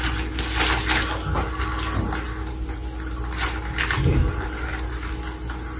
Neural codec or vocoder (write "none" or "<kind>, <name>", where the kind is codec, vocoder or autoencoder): none